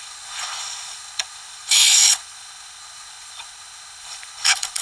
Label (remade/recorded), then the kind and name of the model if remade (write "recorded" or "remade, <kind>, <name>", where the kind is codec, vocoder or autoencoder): remade, codec, HILCodec